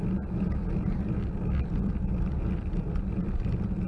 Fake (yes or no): no